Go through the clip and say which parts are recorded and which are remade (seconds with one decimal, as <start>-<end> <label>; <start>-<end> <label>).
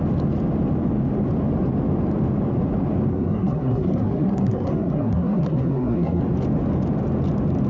0.0-3.1 recorded; 3.1-6.2 remade; 6.2-7.7 recorded